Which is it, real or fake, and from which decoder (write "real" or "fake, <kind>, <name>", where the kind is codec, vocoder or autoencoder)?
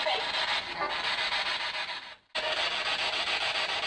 real